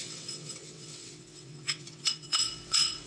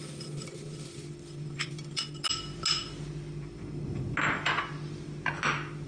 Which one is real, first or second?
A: second